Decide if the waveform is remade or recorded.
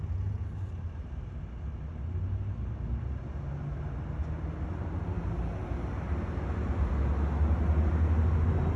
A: recorded